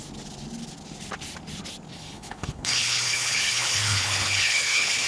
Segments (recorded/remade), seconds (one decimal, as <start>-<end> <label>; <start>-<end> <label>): 0.0-1.9 recorded; 1.9-5.1 remade

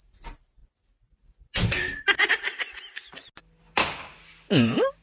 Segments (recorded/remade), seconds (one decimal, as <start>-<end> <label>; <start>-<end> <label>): 0.0-5.0 recorded

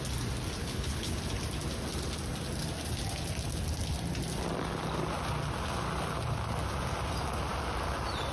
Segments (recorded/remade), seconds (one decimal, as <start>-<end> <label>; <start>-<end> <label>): 0.0-0.6 recorded; 0.6-1.2 remade; 1.2-8.3 recorded

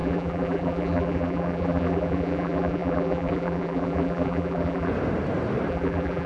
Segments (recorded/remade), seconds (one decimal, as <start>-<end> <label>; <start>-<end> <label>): 0.0-4.9 remade; 4.9-5.7 recorded; 5.7-6.3 remade